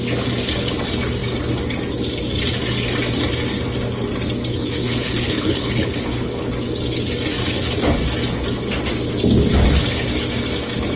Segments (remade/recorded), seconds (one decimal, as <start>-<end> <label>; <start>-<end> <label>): 0.0-4.5 recorded; 4.5-6.5 remade; 6.5-11.0 recorded